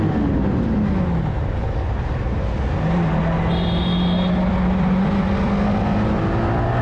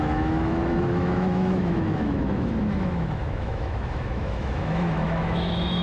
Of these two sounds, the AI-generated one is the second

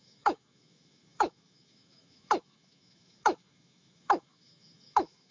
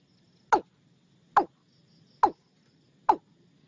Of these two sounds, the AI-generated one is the first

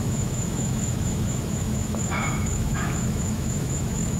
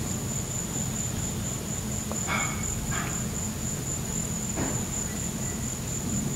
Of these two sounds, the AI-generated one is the first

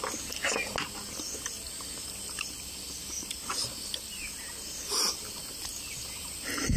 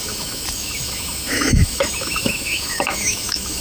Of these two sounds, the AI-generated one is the second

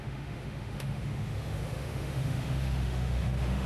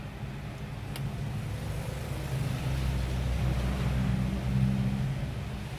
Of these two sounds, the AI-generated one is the first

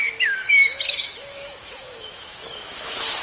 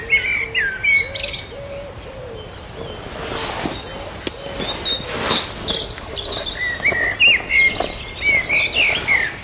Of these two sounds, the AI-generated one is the first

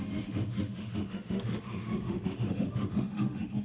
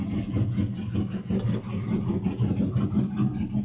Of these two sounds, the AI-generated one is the first